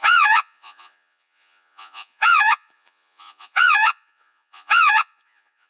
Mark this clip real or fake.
fake